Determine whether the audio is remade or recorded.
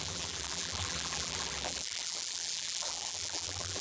remade